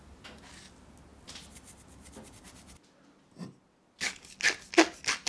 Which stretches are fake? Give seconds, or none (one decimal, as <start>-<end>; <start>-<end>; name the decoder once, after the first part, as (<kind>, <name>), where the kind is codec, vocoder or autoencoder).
none